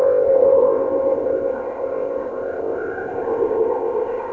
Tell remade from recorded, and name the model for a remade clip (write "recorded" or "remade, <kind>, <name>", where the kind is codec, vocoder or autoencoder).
remade, codec, ZipCodec